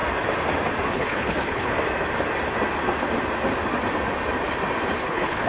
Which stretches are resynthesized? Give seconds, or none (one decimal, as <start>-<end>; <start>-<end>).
0.9-1.7; 5.0-5.5